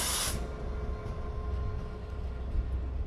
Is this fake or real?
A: real